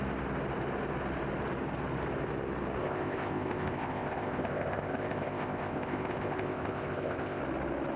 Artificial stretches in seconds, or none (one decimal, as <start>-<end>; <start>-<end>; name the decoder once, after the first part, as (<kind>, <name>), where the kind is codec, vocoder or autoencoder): 2.8-7.4 (codec, ZipCodec)